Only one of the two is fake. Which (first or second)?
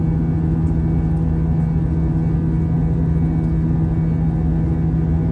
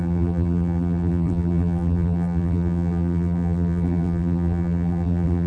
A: second